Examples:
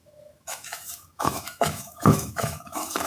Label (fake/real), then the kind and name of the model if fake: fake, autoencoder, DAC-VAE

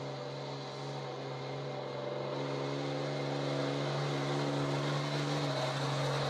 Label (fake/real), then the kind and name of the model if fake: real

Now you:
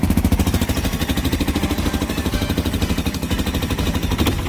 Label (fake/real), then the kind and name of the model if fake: real